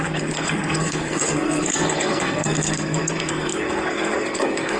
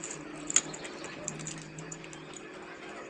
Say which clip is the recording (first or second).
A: second